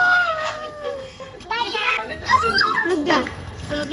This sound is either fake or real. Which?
fake